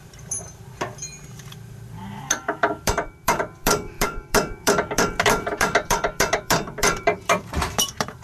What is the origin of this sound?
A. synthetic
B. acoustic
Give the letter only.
A